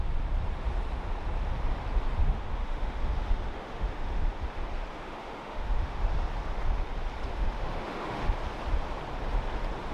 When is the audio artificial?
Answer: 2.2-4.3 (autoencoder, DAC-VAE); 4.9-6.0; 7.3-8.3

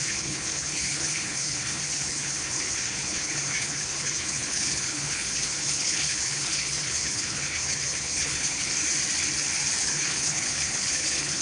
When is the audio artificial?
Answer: 0.0-8.7 (codec, HILCodec); 9.8-11.4

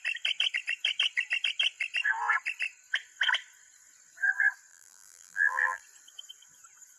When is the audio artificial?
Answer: 4.7-5.8 (vocoder, BigVGAN v2)

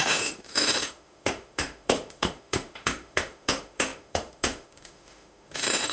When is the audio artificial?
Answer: 0.0-5.9 (autoencoder, DAC-VAE)